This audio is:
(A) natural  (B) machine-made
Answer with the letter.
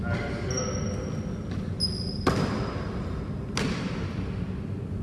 A